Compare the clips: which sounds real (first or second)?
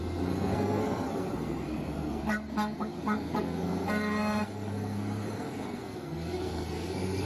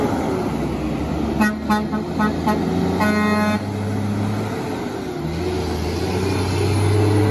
second